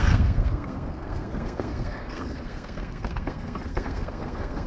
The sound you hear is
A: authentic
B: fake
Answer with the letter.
B